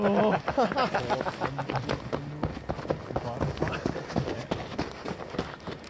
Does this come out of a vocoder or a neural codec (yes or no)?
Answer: no